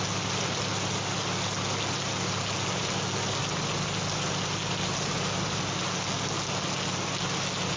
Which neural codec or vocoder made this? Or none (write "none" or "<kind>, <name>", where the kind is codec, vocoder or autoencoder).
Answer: none